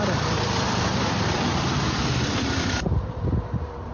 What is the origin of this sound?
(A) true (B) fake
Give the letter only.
B